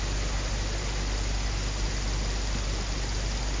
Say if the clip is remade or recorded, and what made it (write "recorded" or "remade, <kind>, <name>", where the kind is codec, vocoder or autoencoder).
recorded